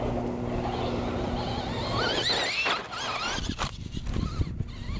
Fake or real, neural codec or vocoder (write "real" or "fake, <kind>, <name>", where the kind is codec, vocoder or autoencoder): real